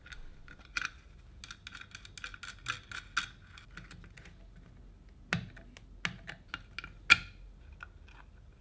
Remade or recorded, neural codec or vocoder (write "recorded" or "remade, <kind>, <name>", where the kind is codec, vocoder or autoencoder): recorded